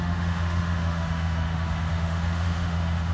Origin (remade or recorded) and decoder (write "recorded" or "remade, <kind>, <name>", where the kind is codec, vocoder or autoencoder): remade, autoencoder, DAC-VAE